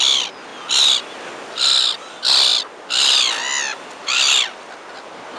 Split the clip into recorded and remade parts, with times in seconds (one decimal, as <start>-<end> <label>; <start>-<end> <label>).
0.0-5.4 recorded